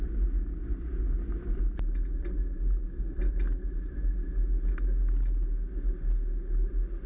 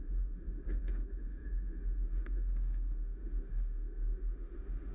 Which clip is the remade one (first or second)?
second